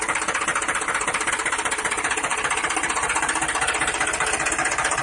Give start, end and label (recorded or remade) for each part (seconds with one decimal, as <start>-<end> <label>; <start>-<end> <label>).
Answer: 0.0-0.5 remade; 0.5-1.3 recorded; 1.3-5.0 remade